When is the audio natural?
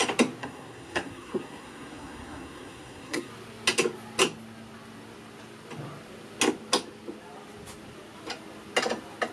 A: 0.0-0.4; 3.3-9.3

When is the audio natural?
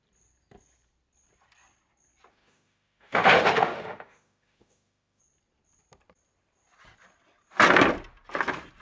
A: 0.0-2.3; 5.2-8.8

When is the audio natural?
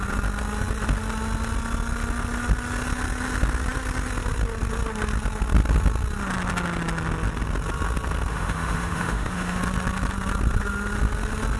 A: 0.0-8.3; 9.6-11.6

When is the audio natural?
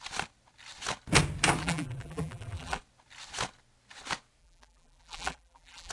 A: 0.0-1.6; 2.8-4.4